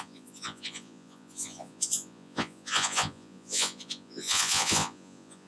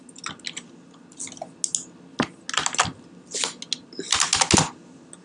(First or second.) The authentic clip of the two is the second